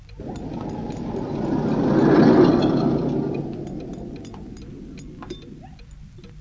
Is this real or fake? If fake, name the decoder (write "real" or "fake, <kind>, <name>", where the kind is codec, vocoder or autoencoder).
real